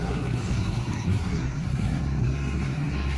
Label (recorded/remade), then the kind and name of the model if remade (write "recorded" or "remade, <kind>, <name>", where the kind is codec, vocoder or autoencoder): remade, codec, SNAC